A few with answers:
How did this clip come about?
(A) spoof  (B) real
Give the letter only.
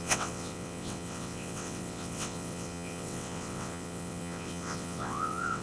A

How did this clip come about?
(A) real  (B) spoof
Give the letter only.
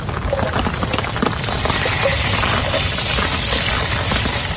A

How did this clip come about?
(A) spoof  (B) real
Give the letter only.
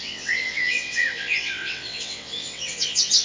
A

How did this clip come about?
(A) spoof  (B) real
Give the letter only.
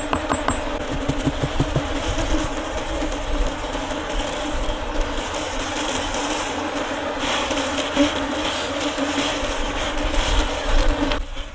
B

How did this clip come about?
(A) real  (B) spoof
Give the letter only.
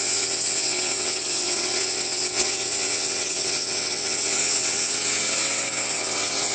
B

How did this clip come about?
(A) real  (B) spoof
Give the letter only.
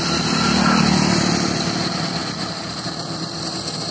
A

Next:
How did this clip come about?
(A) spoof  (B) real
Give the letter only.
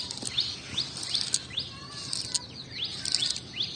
B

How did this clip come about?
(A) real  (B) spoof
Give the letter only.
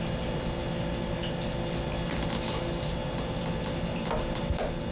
A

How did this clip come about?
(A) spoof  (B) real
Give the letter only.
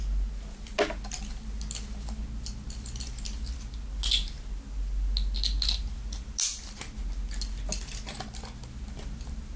B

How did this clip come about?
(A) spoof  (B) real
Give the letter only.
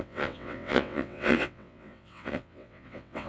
A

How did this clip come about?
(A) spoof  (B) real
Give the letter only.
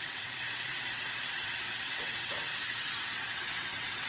A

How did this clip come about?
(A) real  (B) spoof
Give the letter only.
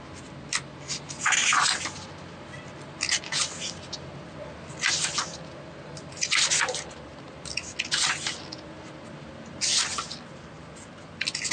A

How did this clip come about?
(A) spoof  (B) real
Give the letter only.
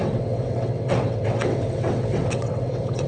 A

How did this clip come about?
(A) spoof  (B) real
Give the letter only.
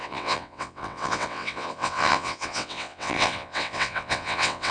A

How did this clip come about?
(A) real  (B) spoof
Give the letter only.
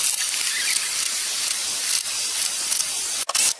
A